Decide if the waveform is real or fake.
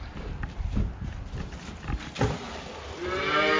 real